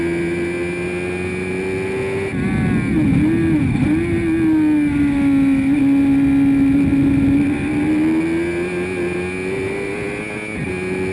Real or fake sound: real